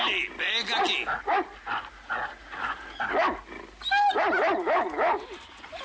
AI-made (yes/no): no